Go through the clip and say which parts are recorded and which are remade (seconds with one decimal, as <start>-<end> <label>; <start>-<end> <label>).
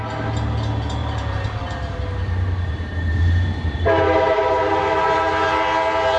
0.0-1.0 recorded; 1.0-4.7 remade; 4.7-6.2 recorded